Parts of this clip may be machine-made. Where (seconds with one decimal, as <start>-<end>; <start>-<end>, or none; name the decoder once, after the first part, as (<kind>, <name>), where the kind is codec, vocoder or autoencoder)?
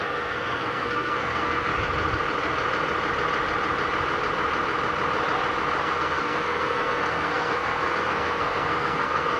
0.0-1.7 (codec, SNAC); 5.8-9.4